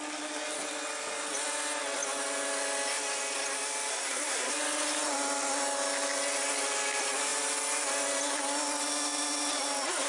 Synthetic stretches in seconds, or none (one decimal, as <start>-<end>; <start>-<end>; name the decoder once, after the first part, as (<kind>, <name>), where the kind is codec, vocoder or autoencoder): 3.9-4.5 (codec, SNAC)